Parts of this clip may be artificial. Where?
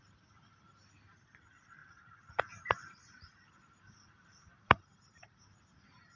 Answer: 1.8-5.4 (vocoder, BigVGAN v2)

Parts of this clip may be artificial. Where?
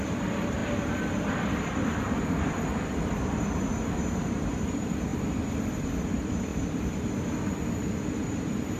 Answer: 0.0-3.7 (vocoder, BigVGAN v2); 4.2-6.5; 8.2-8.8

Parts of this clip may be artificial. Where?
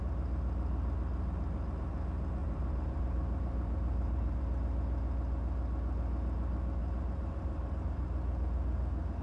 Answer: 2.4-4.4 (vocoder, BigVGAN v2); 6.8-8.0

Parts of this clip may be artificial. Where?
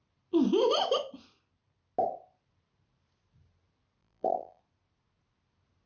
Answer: 4.0-4.6 (vocoder, BigVGAN v2)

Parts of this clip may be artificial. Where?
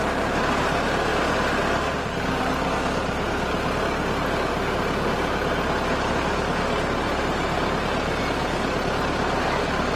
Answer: 1.1-2.5 (vocoder, BigVGAN v2)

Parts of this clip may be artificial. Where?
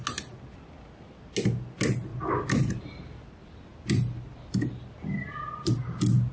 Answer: 2.1-2.7 (vocoder, BigVGAN v2); 3.7-6.3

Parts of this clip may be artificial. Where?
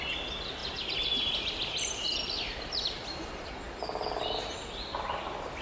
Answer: 0.6-3.5 (vocoder, BigVGAN v2)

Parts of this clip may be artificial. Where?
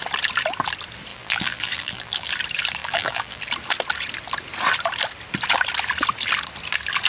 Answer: 1.1-2.3 (vocoder, BigVGAN v2); 2.8-3.4